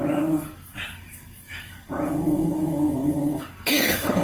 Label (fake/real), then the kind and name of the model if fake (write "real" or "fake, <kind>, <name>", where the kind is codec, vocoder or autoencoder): fake, codec, DAC